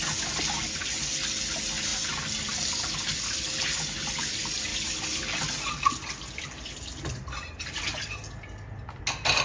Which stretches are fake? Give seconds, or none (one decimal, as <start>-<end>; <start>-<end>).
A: none